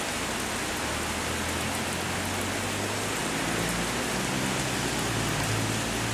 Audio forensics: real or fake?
real